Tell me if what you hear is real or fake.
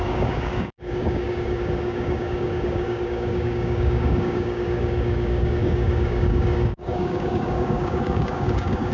fake